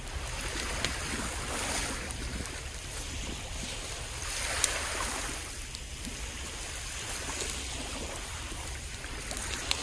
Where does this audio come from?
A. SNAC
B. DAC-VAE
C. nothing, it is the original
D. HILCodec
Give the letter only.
C